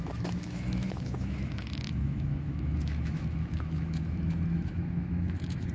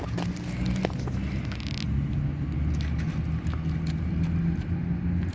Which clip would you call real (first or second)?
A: second